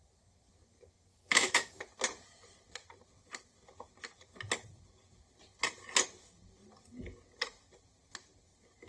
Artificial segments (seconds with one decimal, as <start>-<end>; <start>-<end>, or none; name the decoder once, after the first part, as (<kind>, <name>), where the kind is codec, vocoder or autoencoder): 1.1-1.8 (autoencoder, DAC-VAE)